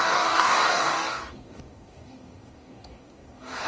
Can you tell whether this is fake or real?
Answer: fake